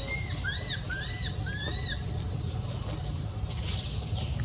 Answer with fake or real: real